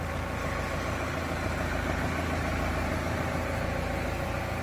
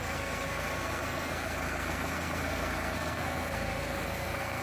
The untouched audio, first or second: first